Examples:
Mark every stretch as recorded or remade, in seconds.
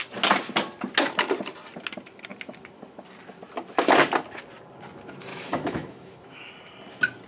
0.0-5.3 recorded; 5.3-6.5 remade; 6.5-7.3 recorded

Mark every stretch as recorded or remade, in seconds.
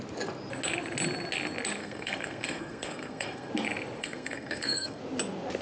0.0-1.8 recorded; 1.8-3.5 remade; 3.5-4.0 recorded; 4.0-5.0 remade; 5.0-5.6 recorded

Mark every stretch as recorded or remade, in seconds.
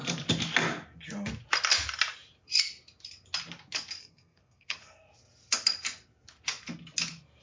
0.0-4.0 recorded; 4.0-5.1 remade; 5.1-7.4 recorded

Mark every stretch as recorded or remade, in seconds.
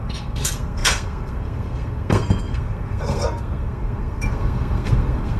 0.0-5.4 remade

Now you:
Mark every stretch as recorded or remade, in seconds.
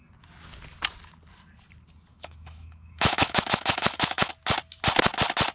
0.0-2.1 recorded; 2.1-4.3 remade; 4.3-5.5 recorded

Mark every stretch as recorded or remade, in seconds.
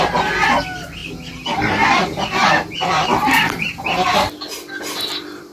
0.0-5.5 recorded